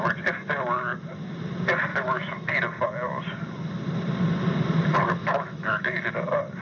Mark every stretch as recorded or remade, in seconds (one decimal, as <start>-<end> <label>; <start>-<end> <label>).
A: 0.0-1.9 recorded; 1.9-2.5 remade; 2.5-5.2 recorded; 5.2-6.1 remade; 6.1-6.6 recorded